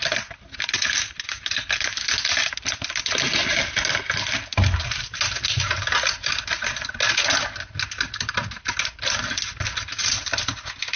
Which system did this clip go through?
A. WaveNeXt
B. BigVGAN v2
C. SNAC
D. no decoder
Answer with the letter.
D